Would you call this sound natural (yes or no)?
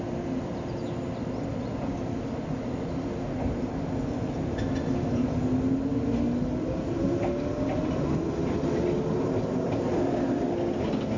yes